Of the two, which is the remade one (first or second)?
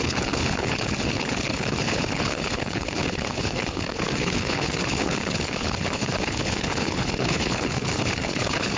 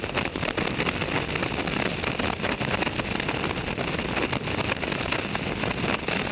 first